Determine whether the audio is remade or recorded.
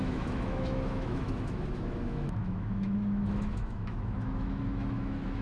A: remade